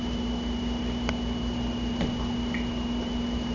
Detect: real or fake real